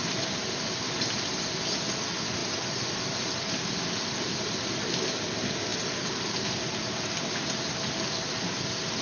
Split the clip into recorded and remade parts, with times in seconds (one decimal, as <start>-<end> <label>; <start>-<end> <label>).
0.0-9.0 recorded